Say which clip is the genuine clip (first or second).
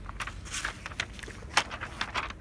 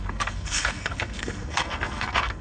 first